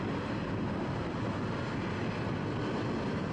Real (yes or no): yes